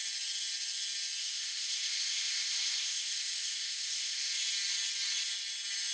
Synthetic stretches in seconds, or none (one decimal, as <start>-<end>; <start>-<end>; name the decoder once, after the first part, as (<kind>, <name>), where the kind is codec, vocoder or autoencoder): 1.2-4.3 (codec, ZipCodec)